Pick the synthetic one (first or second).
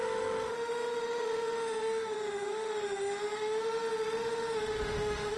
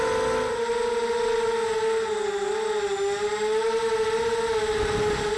first